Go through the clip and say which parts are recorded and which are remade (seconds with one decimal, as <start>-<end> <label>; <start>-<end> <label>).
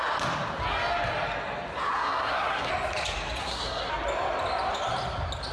0.0-1.9 recorded; 1.9-2.7 remade; 2.7-3.4 recorded; 3.4-3.9 remade; 3.9-5.5 recorded